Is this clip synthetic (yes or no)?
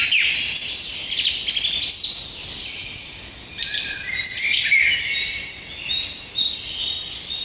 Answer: no